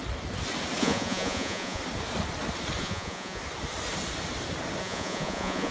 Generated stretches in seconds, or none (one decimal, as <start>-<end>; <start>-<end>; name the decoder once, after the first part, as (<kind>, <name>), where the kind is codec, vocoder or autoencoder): 0.8-1.8 (vocoder, Vocos); 2.8-3.4; 4.8-5.7